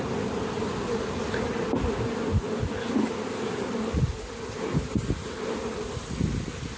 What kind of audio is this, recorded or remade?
recorded